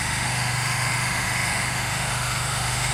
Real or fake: fake